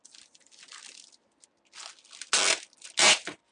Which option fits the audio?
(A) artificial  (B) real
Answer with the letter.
B